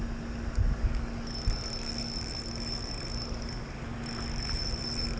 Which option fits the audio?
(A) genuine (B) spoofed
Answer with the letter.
A